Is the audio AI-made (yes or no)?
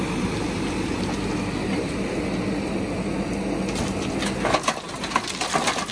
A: no